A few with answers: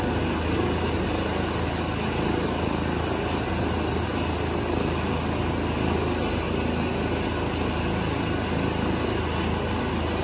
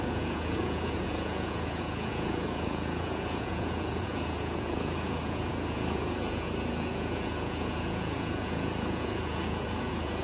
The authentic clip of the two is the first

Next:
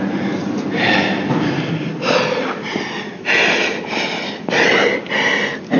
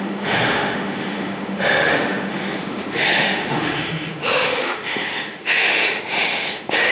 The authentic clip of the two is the first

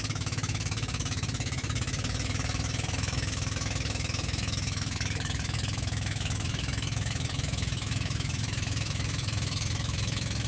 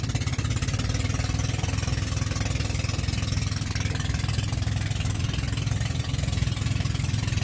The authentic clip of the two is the second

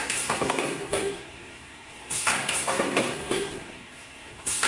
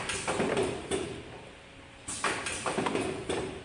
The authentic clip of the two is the second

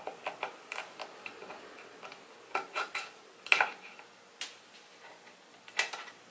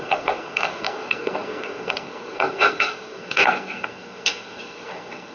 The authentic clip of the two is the first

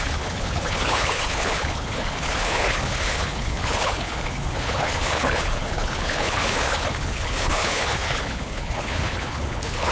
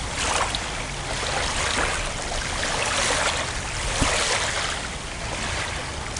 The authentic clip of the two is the second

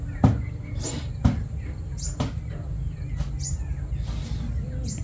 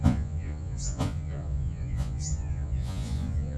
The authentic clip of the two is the first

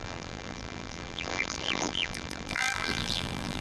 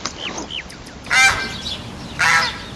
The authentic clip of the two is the second